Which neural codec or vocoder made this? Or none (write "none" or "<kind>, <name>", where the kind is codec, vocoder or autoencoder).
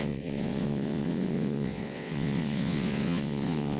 vocoder, WaveNeXt